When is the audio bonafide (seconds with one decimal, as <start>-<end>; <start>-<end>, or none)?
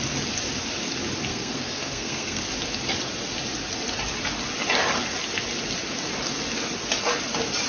0.0-1.3; 2.4-7.7